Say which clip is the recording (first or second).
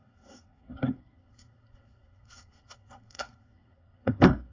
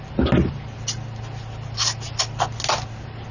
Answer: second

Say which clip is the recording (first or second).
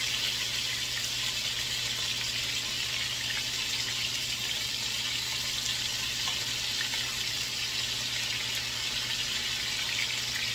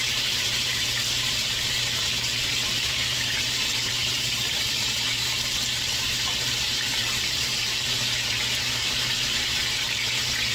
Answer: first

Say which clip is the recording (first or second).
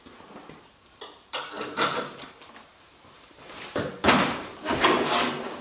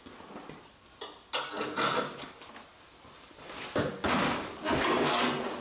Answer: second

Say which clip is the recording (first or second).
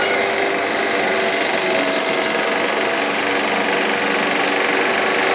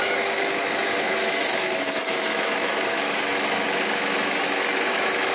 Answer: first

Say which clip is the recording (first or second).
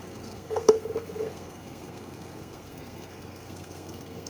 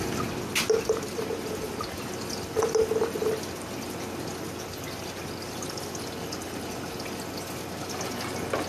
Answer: second